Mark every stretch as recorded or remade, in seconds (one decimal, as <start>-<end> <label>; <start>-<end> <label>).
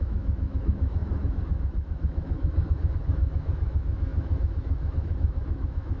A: 0.0-6.0 remade